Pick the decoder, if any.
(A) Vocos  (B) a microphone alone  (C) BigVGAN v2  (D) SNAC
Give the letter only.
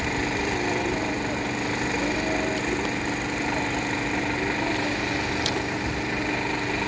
B